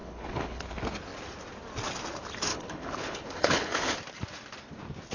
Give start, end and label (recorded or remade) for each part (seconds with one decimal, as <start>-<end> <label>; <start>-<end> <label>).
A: 0.0-0.6 remade; 0.6-2.5 recorded; 2.5-3.9 remade; 3.9-5.1 recorded